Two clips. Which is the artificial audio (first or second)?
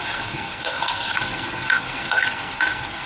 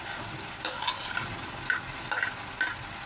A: first